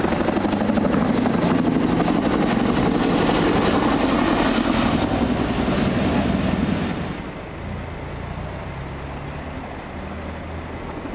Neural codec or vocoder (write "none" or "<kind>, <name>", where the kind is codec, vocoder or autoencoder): none